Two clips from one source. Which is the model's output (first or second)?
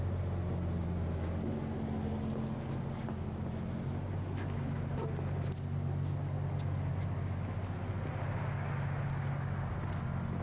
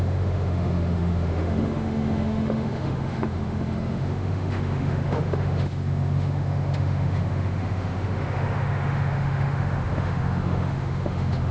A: second